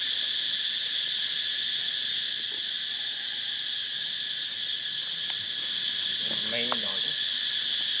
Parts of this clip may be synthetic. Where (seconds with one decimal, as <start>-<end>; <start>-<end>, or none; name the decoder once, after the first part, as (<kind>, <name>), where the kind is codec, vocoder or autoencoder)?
none